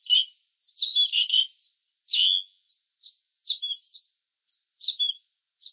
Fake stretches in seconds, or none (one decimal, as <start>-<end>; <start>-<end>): 2.2-2.7